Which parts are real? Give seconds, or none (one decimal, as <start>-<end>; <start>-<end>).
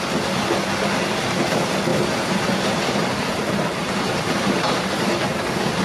0.0-1.9